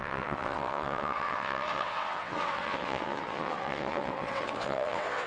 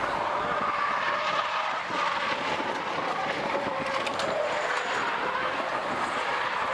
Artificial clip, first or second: first